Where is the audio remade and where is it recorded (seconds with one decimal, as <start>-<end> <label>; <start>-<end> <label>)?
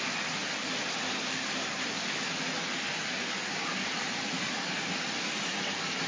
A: 0.0-6.1 recorded